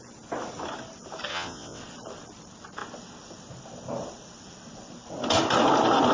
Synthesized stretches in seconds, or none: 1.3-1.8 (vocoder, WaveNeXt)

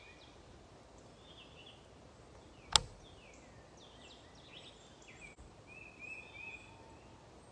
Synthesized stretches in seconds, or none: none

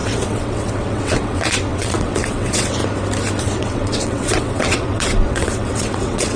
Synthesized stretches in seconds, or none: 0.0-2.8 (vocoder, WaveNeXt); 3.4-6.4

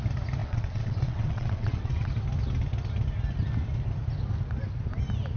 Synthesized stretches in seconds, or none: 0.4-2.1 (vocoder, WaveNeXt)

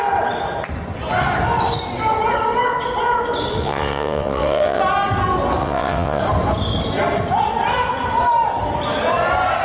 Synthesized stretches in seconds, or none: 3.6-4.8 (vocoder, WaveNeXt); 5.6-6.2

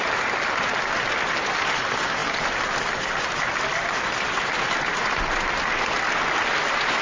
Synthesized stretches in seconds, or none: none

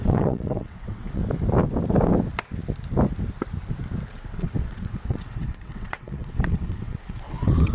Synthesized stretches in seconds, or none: 0.0-1.2 (vocoder, WaveNeXt); 4.1-7.7